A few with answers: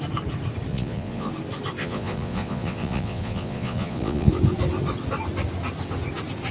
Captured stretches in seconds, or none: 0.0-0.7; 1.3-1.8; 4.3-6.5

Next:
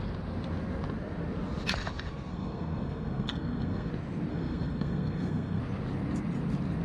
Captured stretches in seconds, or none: 0.0-2.3; 3.9-4.3; 5.6-6.8

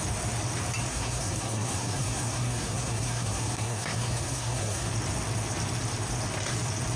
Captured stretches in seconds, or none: 0.0-0.9; 4.9-7.0

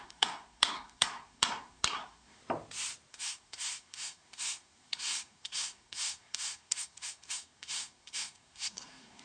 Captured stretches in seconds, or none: 2.4-3.1

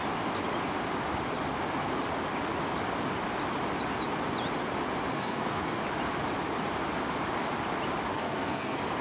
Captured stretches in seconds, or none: 0.0-5.1; 5.8-8.1

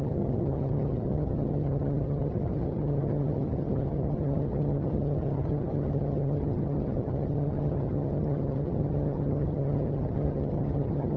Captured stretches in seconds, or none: none